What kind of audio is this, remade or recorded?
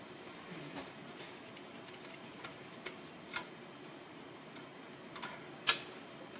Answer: remade